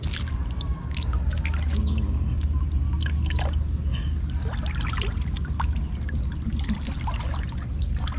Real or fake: real